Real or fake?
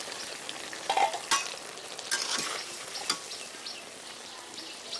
real